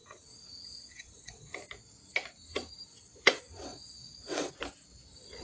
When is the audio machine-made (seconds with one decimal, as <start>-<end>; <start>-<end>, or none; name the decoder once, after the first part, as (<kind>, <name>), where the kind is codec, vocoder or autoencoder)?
0.0-1.5 (vocoder, WaveNeXt); 2.9-4.5